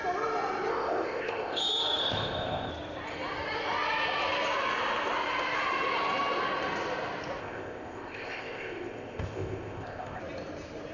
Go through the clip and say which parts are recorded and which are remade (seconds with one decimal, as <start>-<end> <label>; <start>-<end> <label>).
0.0-0.7 recorded; 0.7-1.6 remade; 1.6-2.0 recorded; 2.0-2.7 remade; 2.7-7.4 recorded; 7.4-10.2 remade; 10.2-10.9 recorded